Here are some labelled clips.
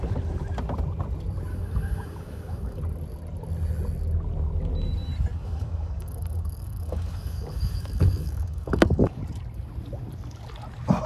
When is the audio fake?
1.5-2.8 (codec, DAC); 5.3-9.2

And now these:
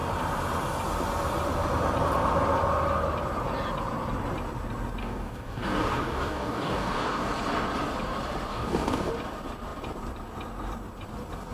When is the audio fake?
5.0-7.3 (codec, DAC); 8.5-9.1

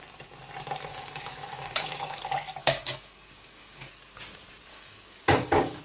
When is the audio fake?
0.9-2.2 (codec, DAC); 2.6-3.9; 4.7-5.8

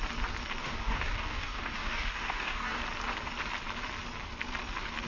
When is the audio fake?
0.6-2.8 (codec, DAC)

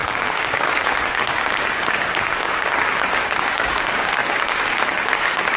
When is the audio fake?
0.0-5.6 (codec, DAC)